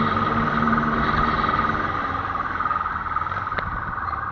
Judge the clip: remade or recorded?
recorded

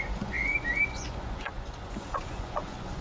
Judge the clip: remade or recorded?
remade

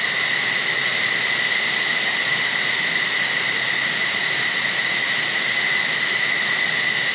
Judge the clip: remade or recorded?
recorded